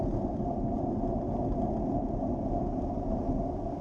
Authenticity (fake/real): real